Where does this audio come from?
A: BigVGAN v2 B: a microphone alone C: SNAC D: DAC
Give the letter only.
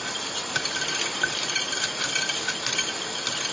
B